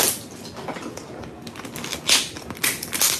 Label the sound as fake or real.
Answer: real